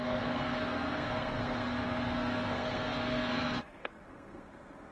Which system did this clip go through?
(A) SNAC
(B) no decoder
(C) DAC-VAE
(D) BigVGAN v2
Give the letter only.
A